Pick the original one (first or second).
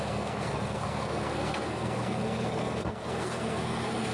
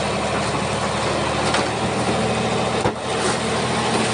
second